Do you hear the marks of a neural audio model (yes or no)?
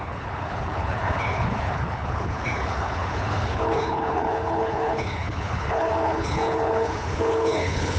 yes